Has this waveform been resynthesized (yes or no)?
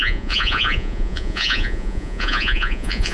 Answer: yes